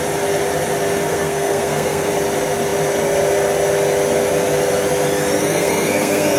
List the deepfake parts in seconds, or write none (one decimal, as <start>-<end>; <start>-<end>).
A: 1.1-2.1; 5.4-6.4